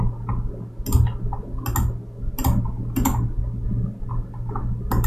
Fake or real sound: real